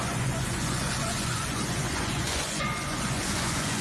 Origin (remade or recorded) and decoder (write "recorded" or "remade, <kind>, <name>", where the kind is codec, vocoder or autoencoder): remade, vocoder, Vocos